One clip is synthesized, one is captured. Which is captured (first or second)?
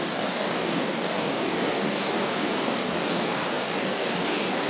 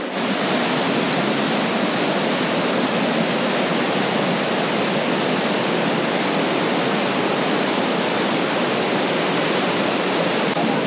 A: second